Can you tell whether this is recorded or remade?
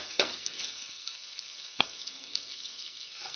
remade